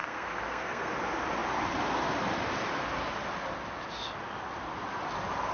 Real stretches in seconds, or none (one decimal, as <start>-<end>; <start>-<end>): 0.9-5.5